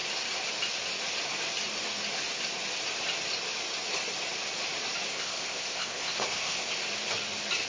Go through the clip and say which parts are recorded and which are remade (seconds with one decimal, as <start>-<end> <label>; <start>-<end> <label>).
0.0-5.1 recorded; 5.1-6.7 remade; 6.7-7.7 recorded